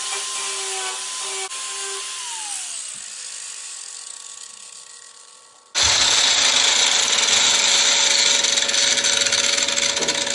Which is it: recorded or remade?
recorded